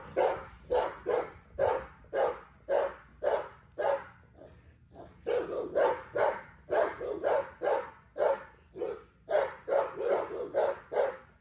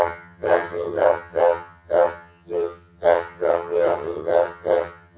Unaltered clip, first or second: first